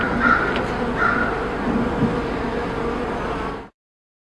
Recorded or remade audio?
recorded